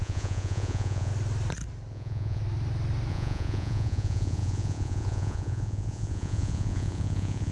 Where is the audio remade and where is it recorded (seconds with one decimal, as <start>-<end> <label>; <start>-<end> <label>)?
0.0-1.1 remade; 1.1-1.9 recorded; 1.9-2.4 remade; 2.4-3.1 recorded; 3.1-7.5 remade